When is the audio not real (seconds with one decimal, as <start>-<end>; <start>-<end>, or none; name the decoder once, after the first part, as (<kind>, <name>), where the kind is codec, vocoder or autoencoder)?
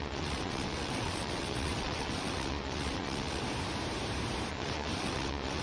0.0-3.4 (vocoder, WaveNeXt); 4.5-5.6